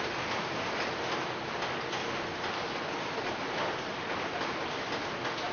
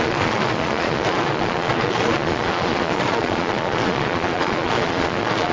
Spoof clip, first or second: second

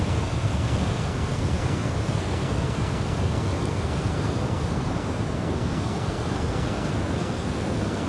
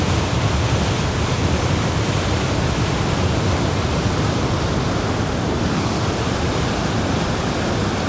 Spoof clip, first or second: first